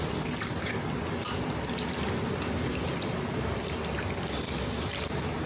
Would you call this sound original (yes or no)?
yes